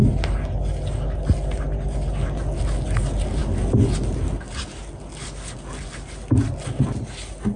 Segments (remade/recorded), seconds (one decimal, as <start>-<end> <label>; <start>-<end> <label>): 0.0-7.6 recorded